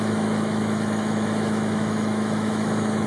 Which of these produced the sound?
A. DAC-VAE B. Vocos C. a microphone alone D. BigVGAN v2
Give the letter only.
A